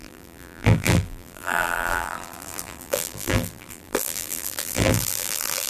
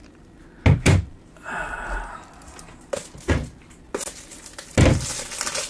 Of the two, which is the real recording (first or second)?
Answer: second